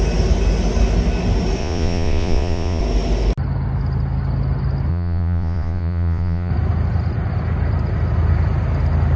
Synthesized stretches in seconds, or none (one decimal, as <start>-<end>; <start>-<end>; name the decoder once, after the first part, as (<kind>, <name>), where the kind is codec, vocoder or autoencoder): 1.6-2.8 (vocoder, Vocos); 4.9-6.5